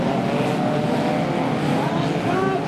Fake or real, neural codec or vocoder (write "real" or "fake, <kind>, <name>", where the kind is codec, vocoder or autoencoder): real